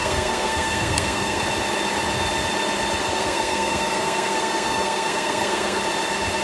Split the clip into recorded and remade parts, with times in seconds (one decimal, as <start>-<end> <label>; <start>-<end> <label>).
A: 0.0-1.4 remade; 1.4-3.0 recorded; 3.0-5.8 remade; 5.8-6.4 recorded